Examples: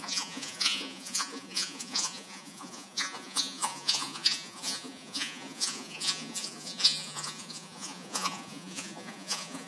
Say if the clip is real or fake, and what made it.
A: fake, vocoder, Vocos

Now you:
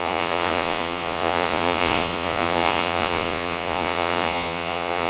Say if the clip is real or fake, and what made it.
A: fake, vocoder, Vocos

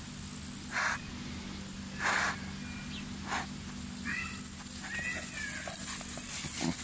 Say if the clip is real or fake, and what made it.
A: real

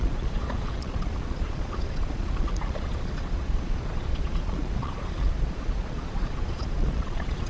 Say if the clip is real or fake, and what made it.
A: fake, vocoder, Vocos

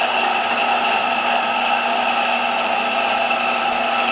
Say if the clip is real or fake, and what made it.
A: real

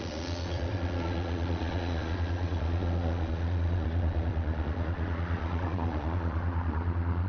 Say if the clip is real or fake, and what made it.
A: fake, vocoder, Vocos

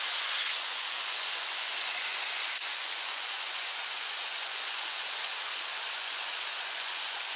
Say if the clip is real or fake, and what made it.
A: fake, vocoder, Vocos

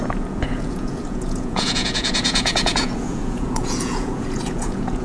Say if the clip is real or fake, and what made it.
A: fake, vocoder, Vocos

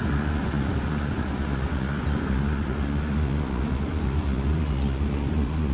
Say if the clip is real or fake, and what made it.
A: fake, vocoder, Vocos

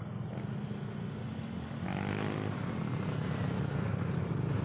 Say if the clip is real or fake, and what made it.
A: real